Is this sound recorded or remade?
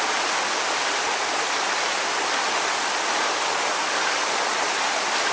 recorded